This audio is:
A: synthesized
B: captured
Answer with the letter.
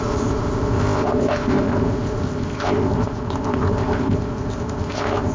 A